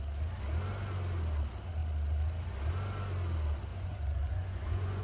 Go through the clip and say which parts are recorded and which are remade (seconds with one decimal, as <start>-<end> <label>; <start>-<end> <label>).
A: 0.0-3.7 recorded; 3.7-5.0 remade

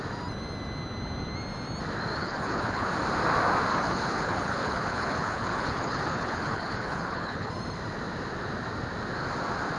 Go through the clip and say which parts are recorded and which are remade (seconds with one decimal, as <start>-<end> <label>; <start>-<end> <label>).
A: 0.0-2.2 recorded; 2.2-2.9 remade; 2.9-3.7 recorded; 3.7-7.5 remade; 7.5-9.8 recorded

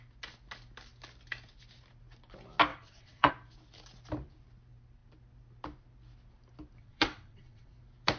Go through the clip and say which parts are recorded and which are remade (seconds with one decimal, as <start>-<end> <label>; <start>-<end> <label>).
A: 0.0-2.7 recorded; 2.7-3.3 remade; 3.3-6.8 recorded; 6.8-7.7 remade; 7.7-8.2 recorded

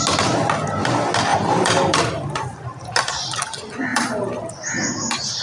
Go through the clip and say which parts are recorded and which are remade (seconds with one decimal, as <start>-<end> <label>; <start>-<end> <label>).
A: 0.0-1.3 recorded; 1.3-2.9 remade; 2.9-3.9 recorded; 3.9-4.7 remade; 4.7-5.4 recorded

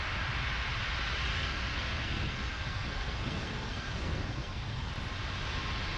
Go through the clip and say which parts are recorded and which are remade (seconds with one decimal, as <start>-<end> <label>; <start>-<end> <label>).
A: 0.0-1.3 recorded; 1.3-4.9 remade; 4.9-6.0 recorded

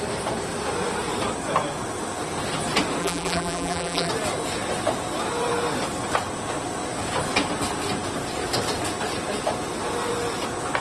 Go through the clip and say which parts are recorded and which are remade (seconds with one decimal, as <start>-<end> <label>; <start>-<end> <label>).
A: 0.0-3.0 recorded; 3.0-4.1 remade; 4.1-10.8 recorded

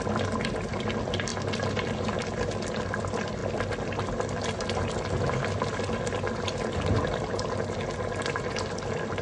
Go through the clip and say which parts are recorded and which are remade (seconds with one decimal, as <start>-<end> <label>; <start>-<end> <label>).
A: 0.0-9.2 recorded

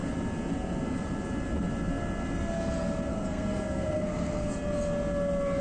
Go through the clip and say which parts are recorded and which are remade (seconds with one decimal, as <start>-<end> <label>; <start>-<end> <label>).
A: 0.0-3.1 recorded; 3.1-4.5 remade; 4.5-5.6 recorded